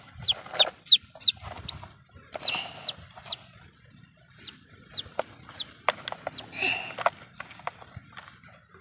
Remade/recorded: recorded